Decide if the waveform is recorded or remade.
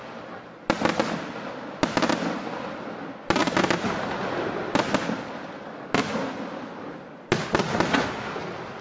recorded